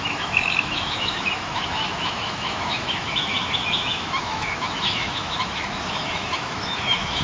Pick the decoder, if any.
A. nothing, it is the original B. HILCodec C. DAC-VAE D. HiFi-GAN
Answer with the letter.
C